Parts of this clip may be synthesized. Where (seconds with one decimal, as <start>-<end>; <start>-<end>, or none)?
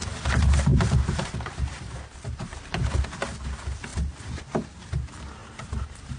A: 0.7-2.5; 3.9-4.4; 5.4-6.2